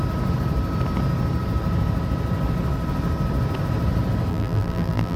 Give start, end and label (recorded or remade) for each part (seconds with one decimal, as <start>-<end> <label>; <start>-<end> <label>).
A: 0.0-4.3 recorded; 4.3-5.2 remade